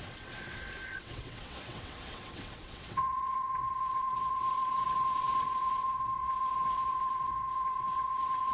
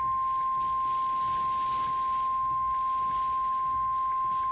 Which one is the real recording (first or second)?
second